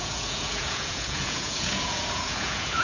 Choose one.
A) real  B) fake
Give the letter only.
B